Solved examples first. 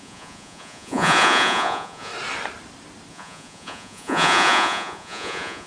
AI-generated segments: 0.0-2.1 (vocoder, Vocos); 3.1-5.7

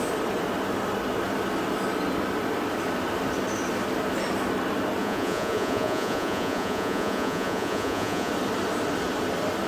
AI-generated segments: 5.0-8.3 (vocoder, Vocos)

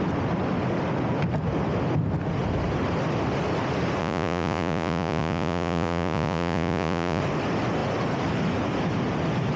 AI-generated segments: 4.0-7.2 (vocoder, Vocos)

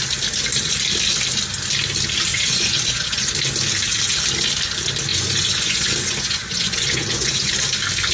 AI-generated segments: 2.3-3.3 (vocoder, Vocos); 5.1-7.5

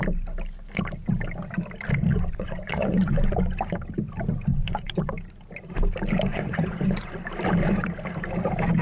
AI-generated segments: 2.1-3.4 (vocoder, Vocos); 4.5-5.1; 6.3-7.1

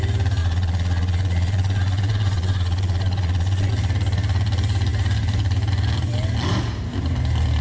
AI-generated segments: 0.4-3.7 (vocoder, Vocos)